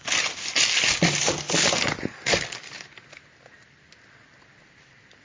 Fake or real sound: real